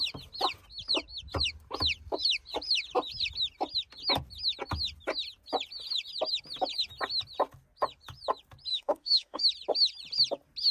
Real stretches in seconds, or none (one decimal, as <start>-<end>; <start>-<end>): 0.0-8.7; 9.4-10.7